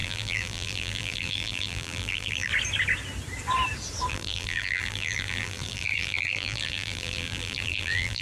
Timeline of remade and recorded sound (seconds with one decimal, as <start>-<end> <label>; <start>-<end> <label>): 0.0-2.5 remade; 2.5-4.1 recorded; 4.1-8.2 remade